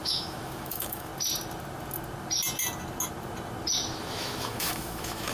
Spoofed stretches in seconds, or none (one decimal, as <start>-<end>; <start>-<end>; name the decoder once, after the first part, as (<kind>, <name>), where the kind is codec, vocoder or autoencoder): 0.0-1.1 (autoencoder, DAC-VAE); 4.0-5.3